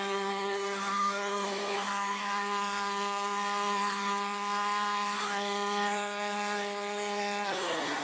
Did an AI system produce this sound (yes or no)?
yes